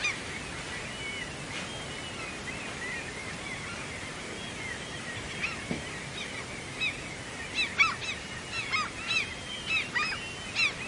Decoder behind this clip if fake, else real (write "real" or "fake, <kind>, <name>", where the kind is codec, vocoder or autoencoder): real